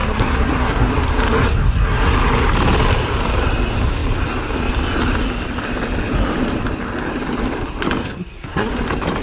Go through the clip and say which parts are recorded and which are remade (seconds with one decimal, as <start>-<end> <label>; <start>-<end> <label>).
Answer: 0.0-0.9 remade; 0.9-1.6 recorded; 1.6-2.1 remade; 2.1-8.0 recorded; 8.0-8.7 remade; 8.7-9.2 recorded